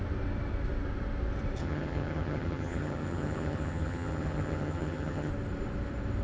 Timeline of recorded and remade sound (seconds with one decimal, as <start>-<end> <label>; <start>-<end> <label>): 0.0-1.6 recorded; 1.6-5.3 remade; 5.3-6.2 recorded